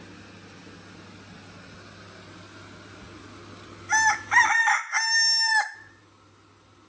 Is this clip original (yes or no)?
yes